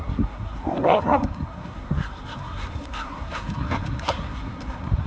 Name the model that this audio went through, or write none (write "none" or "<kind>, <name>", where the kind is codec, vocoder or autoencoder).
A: codec, SNAC